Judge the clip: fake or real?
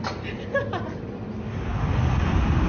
real